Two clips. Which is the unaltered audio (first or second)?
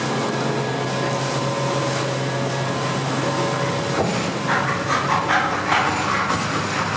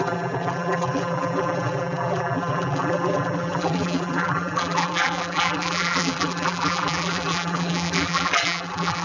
first